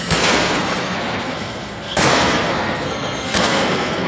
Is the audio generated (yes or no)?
yes